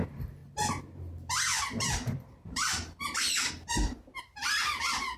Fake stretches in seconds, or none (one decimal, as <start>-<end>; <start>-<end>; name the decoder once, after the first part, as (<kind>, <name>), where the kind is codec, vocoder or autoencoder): 0.0-5.2 (vocoder, BigVGAN v2)